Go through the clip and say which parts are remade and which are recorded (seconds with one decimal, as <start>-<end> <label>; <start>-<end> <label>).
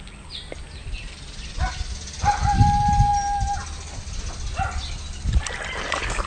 0.0-6.3 recorded